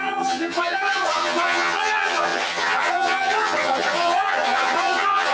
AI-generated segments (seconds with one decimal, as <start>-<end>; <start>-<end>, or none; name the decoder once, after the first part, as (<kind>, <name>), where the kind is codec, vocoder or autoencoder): 0.0-5.3 (vocoder, HiFi-GAN)